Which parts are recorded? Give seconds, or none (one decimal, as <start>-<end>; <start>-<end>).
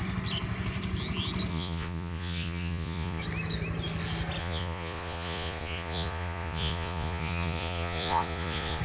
0.0-1.5; 3.2-4.4